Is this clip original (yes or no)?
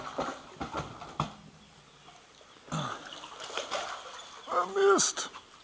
yes